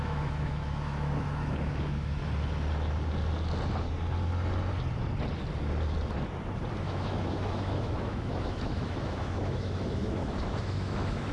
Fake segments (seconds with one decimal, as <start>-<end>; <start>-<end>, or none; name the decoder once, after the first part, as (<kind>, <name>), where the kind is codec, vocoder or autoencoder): 0.0-2.2 (autoencoder, DAC-VAE); 6.8-11.3